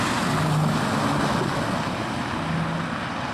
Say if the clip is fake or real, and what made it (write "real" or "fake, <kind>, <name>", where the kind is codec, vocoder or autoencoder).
real